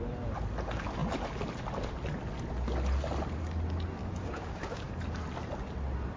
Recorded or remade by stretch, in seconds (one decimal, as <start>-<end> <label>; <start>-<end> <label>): 0.0-4.0 recorded; 4.0-4.9 remade; 4.9-6.2 recorded